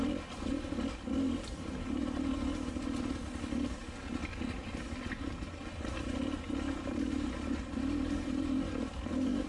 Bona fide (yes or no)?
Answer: yes